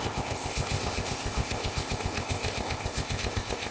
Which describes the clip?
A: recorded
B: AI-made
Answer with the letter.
B